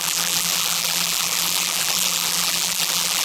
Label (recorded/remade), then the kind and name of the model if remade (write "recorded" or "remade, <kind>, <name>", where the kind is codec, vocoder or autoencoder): remade, vocoder, BigVGAN v2